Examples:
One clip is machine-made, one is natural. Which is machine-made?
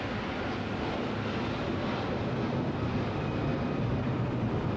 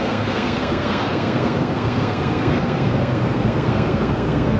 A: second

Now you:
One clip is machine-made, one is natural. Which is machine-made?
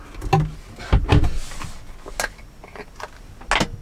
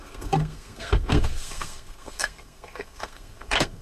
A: second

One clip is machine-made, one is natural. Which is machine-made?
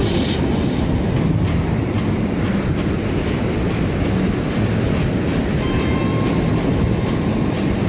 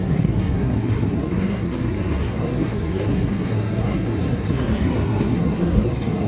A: second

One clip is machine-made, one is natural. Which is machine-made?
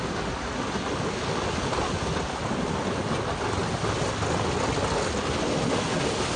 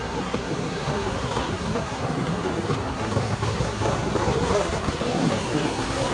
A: second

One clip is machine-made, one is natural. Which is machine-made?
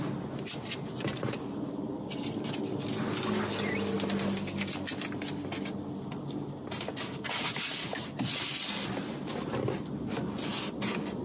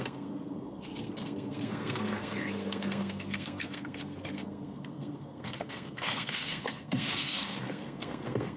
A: second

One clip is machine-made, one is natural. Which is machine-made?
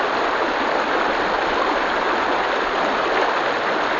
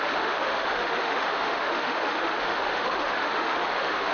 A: second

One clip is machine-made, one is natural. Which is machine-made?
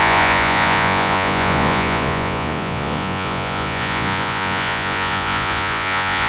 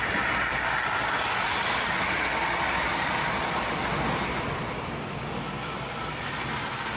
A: first